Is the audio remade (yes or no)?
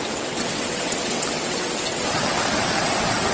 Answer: yes